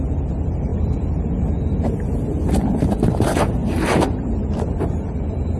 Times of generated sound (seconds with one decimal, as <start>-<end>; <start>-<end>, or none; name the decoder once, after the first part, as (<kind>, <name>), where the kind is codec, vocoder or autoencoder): none